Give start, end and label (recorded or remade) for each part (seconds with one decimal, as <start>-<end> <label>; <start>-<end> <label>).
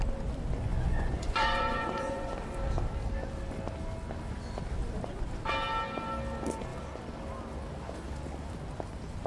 0.0-0.7 recorded; 0.7-2.3 remade; 2.3-9.3 recorded